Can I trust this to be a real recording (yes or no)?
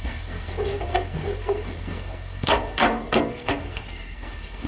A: no